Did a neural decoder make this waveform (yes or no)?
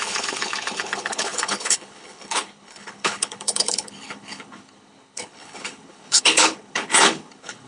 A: yes